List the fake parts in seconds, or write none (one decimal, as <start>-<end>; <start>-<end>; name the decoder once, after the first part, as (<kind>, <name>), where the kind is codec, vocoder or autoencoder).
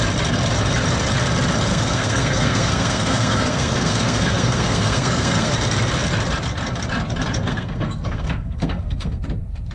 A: 1.7-5.5 (codec, SNAC); 7.4-9.2